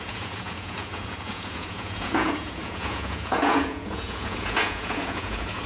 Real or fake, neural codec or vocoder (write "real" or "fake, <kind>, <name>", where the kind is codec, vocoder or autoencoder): fake, vocoder, Vocos